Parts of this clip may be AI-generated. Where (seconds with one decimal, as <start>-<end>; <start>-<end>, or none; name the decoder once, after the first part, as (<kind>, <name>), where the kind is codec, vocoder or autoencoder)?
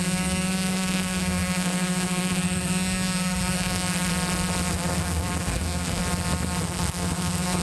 0.0-4.1 (codec, SNAC); 4.7-6.0; 6.6-7.6